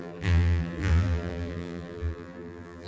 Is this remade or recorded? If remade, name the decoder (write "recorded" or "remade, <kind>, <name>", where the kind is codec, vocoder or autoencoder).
remade, vocoder, BigVGAN v2